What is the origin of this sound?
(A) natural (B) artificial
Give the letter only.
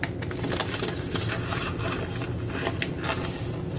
A